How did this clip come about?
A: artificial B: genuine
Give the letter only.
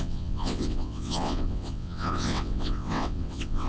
A